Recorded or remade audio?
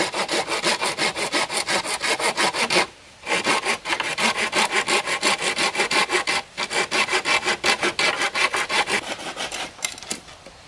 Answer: recorded